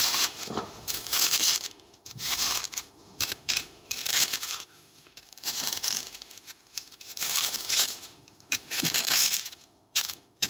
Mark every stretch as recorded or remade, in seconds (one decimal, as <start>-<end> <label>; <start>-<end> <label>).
0.0-10.5 remade